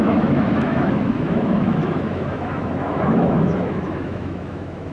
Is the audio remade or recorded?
remade